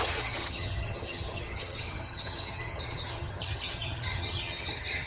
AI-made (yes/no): yes